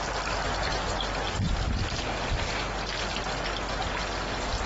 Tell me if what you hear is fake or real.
real